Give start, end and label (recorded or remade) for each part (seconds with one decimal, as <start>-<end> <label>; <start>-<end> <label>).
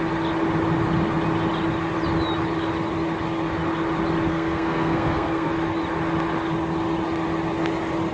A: 0.0-4.3 recorded; 4.3-5.5 remade; 5.5-8.1 recorded